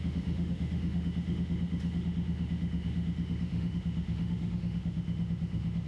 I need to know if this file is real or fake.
fake